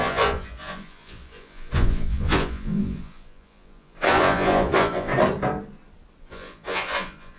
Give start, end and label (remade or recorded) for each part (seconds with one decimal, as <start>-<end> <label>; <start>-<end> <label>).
0.0-5.1 remade; 5.1-6.2 recorded; 6.2-7.4 remade